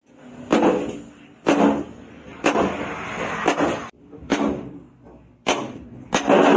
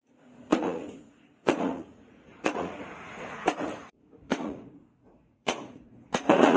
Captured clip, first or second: first